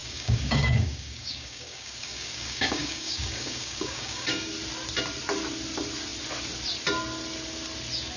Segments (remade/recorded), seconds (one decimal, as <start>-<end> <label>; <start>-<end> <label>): 0.0-4.5 remade; 4.5-8.2 recorded